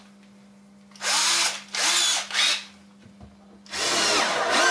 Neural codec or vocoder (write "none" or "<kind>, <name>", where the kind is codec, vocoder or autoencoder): none